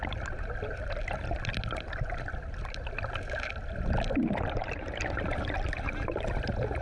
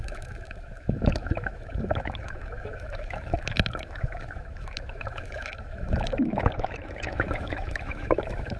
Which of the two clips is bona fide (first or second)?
first